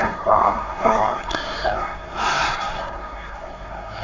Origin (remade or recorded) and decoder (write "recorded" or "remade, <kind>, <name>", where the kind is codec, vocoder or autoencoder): remade, codec, SNAC